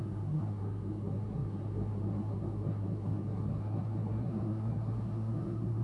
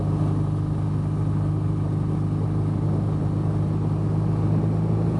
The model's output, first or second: first